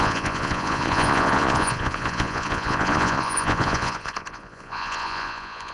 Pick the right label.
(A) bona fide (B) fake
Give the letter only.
B